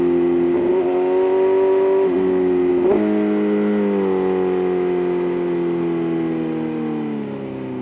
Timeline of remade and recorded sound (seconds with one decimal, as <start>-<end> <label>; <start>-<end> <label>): 0.0-7.8 recorded